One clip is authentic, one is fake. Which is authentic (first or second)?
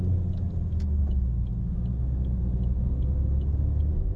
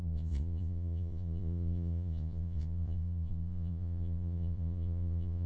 first